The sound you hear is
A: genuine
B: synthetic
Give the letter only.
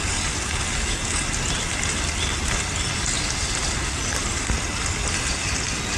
A